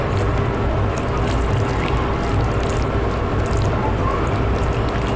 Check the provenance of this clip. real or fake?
real